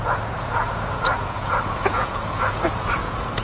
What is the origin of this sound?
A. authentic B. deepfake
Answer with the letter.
B